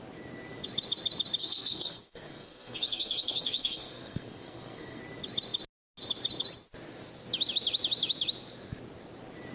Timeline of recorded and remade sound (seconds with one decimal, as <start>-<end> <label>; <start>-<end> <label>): 0.0-1.4 recorded; 1.4-5.0 remade; 5.0-9.5 recorded